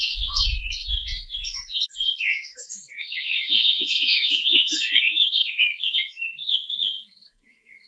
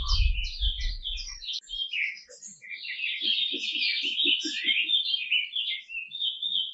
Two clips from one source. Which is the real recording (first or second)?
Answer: second